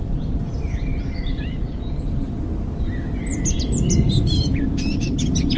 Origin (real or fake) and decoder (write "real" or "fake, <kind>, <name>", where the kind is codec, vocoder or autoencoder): real